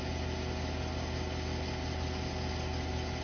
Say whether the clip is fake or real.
real